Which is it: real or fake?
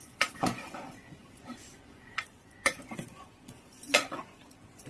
fake